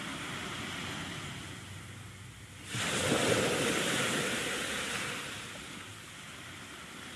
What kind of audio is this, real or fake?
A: real